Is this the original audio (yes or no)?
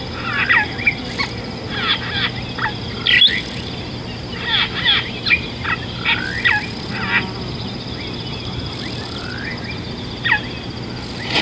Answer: yes